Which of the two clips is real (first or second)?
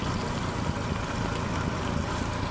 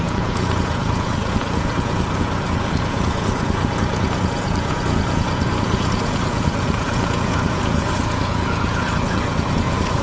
first